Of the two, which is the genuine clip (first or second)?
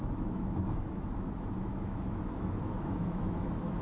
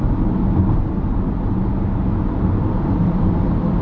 second